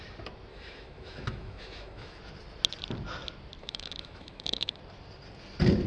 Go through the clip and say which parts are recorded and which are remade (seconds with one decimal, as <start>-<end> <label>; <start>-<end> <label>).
0.0-0.5 recorded; 0.5-2.2 remade; 2.2-3.6 recorded; 3.6-4.8 remade; 4.8-5.9 recorded